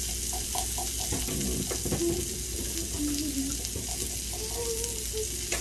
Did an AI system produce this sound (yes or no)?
no